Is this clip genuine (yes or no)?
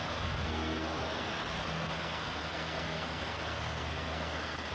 no